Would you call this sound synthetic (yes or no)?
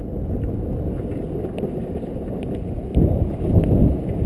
no